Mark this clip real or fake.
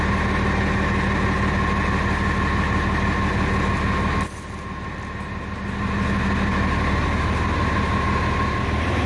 real